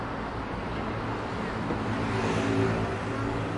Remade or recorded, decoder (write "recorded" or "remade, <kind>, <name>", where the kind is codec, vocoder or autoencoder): recorded